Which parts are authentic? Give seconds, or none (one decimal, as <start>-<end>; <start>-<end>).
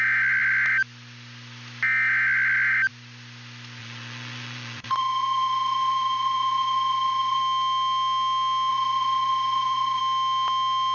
0.0-3.8; 7.4-8.7; 10.0-10.9